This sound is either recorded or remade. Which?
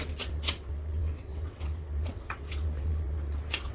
remade